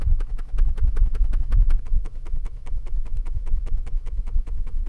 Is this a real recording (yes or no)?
no